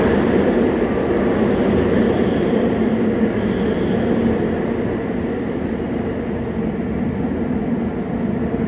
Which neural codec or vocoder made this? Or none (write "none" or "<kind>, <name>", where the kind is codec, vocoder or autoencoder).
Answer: none